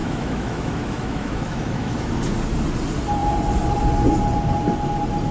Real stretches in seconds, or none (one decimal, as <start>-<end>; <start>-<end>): 2.2-5.3